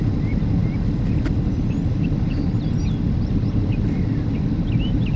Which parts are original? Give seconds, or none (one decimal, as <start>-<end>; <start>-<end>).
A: 0.0-5.2